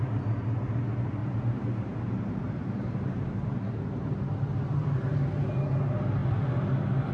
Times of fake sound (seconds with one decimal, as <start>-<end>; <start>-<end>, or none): 1.2-4.1